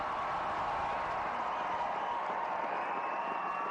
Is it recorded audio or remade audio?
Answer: recorded